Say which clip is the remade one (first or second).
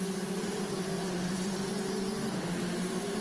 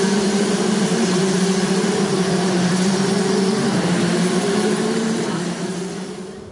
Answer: second